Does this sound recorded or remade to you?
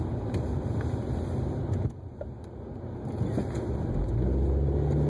recorded